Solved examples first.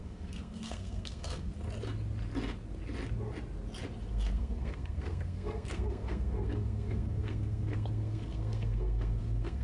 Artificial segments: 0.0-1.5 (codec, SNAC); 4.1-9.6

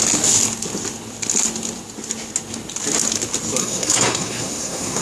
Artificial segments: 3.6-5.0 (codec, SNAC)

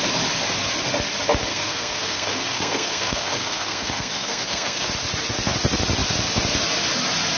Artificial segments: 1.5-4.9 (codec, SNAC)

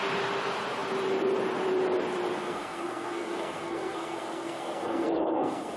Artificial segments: 2.4-5.8 (codec, SNAC)